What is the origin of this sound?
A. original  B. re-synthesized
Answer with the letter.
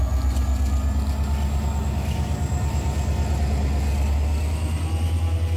A